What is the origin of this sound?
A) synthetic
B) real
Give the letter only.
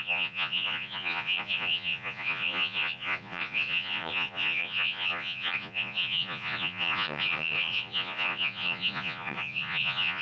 A